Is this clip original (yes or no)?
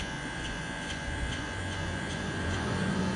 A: no